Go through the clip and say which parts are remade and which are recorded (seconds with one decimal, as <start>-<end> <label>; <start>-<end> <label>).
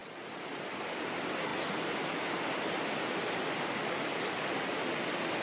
0.0-5.4 recorded